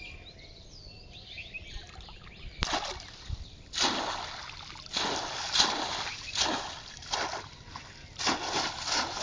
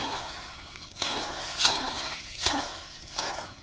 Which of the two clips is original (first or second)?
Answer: first